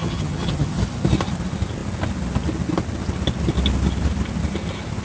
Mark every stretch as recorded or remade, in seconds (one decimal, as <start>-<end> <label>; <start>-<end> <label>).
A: 0.0-0.8 remade; 0.8-5.0 recorded